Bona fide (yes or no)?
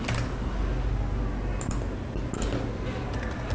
yes